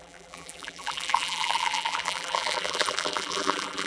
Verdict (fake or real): fake